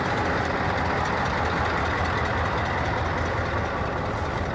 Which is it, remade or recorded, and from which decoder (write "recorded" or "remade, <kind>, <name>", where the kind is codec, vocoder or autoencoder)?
recorded